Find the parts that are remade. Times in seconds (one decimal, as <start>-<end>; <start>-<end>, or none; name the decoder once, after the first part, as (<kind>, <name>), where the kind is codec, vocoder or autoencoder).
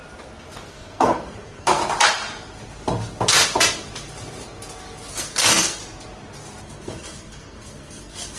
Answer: 0.7-1.8 (codec, SNAC); 5.1-5.8; 6.6-8.4